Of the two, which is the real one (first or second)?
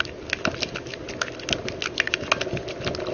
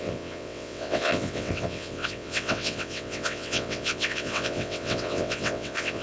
first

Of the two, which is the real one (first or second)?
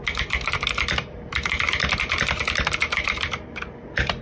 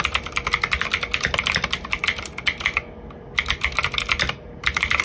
second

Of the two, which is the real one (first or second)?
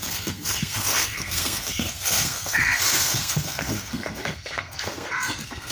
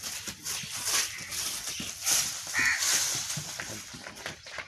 second